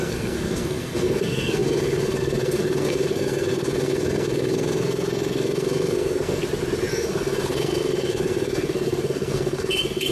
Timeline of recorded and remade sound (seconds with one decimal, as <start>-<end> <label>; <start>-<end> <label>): 0.0-6.4 remade; 6.4-6.9 recorded; 6.9-10.1 remade